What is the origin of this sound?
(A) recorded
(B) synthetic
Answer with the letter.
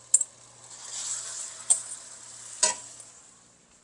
A